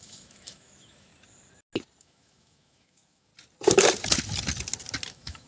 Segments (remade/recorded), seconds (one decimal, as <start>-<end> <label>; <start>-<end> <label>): 0.0-1.1 remade; 1.1-2.0 recorded; 2.0-3.3 remade; 3.3-5.1 recorded; 5.1-5.5 remade